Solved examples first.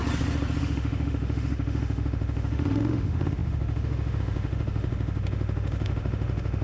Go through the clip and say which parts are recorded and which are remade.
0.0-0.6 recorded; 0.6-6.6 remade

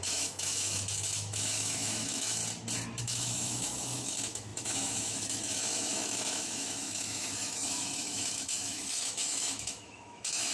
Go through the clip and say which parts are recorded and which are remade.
0.0-2.4 remade; 2.4-3.0 recorded; 3.0-10.5 remade

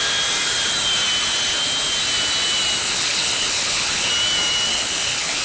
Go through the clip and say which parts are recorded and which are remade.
0.0-2.8 recorded; 2.8-4.1 remade; 4.1-4.7 recorded; 4.7-5.4 remade

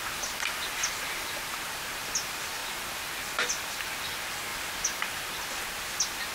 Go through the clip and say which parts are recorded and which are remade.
0.0-6.3 recorded

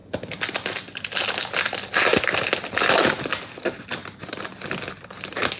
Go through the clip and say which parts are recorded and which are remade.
0.0-5.6 recorded